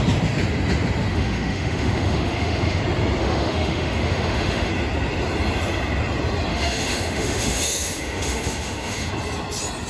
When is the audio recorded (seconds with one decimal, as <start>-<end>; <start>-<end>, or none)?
0.0-1.1; 2.8-3.2; 4.7-6.5; 9.1-9.9